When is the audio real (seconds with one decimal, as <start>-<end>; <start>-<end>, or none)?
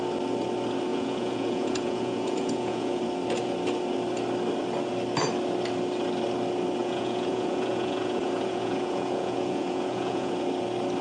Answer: 0.0-0.9; 3.0-6.8; 10.3-11.0